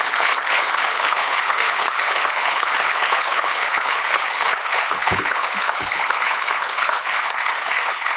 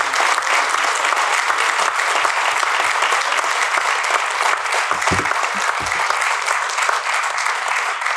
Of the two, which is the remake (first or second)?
first